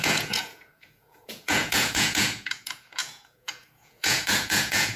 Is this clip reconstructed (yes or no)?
yes